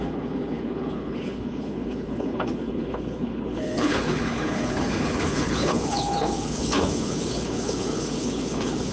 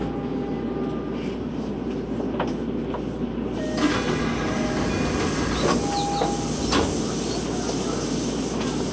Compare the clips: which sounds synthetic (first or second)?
first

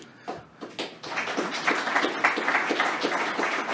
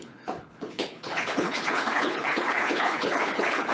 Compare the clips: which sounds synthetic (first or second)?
second